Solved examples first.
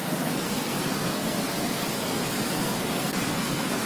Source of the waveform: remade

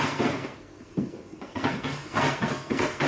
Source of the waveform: remade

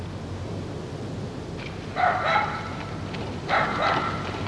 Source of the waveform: recorded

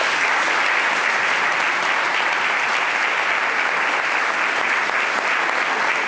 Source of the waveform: recorded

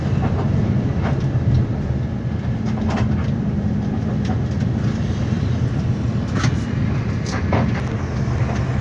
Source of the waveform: recorded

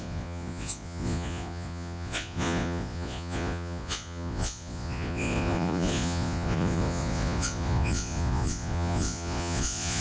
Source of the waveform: remade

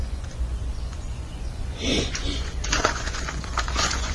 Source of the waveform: remade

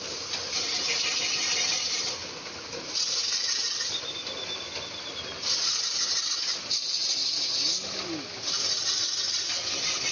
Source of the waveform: recorded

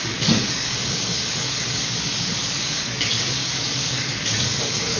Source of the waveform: remade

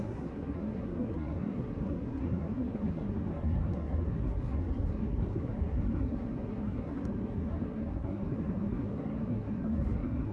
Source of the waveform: remade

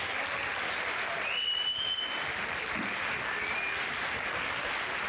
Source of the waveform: recorded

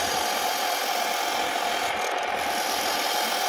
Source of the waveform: recorded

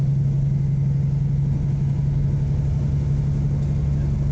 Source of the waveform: recorded